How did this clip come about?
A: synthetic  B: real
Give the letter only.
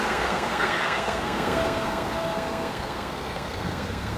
A